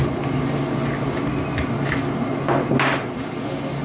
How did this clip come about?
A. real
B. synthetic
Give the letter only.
A